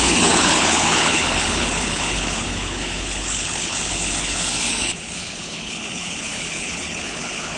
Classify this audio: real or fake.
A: fake